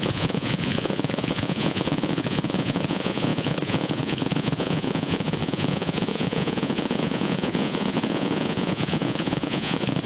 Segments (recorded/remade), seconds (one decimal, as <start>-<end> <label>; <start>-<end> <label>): 0.0-10.1 remade